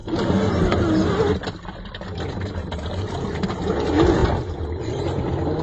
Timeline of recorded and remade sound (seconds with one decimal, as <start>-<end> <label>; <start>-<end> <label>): 0.0-5.6 recorded